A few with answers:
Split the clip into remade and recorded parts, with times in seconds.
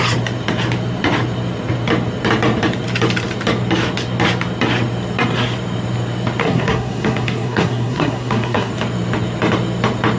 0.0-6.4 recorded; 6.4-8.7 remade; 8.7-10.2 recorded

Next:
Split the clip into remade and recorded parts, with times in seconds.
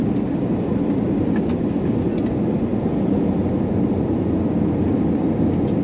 0.0-5.8 recorded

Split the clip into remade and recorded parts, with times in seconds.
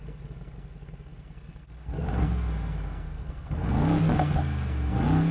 0.0-5.3 remade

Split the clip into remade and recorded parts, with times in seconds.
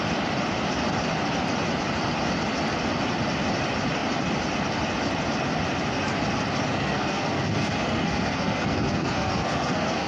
0.0-6.7 recorded; 6.7-10.1 remade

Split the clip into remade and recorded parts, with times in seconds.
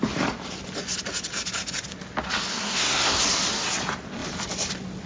0.0-2.5 recorded; 2.5-3.2 remade; 3.2-5.1 recorded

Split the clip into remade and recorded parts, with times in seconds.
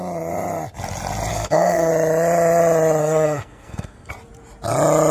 0.0-1.3 recorded; 1.3-1.9 remade; 1.9-3.0 recorded; 3.0-4.1 remade; 4.1-5.1 recorded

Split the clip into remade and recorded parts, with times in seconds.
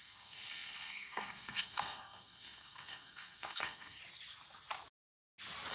0.0-4.0 remade; 4.0-5.7 recorded